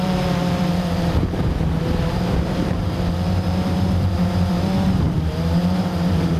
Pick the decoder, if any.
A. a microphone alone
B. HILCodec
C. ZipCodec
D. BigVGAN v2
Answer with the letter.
D